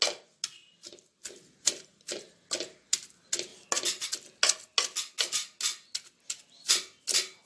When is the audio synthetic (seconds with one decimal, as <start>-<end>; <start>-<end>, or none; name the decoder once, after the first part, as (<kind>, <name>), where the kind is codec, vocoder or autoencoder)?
none